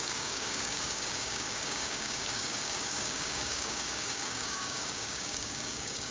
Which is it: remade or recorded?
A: remade